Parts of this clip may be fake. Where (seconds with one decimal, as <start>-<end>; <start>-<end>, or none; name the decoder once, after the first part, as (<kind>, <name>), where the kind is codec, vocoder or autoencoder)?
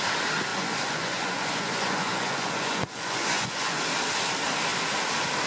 0.5-3.8 (vocoder, Vocos)